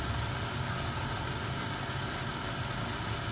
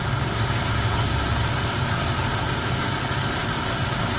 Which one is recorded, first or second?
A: first